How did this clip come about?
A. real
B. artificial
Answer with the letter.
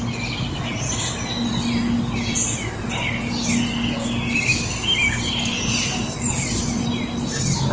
A